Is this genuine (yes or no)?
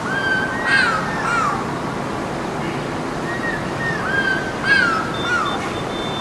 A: yes